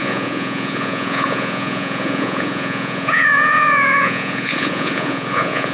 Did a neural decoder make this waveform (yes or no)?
yes